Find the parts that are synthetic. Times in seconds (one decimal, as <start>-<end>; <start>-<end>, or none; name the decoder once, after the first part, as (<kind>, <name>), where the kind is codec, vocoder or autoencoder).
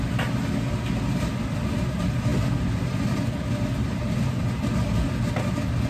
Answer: none